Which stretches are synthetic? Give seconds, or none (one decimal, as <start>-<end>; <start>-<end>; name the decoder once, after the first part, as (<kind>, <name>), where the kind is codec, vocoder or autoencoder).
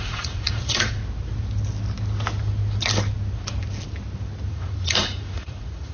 0.0-1.0 (vocoder, Vocos); 4.5-5.9